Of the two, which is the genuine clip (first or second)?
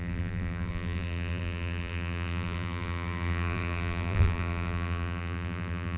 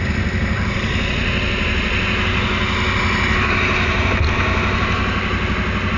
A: second